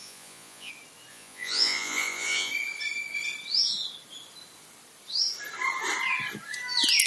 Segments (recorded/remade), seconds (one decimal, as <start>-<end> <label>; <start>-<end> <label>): 0.0-0.7 remade; 0.7-1.1 recorded; 1.1-2.5 remade; 2.5-7.1 recorded